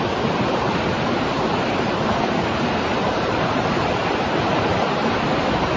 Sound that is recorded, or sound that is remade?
remade